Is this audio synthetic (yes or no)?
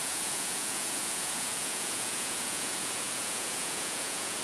yes